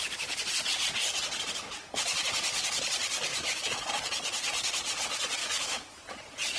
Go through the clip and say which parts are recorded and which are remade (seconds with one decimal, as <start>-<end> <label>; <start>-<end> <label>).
0.0-3.3 recorded; 3.3-3.8 remade; 3.8-5.4 recorded; 5.4-6.0 remade; 6.0-6.6 recorded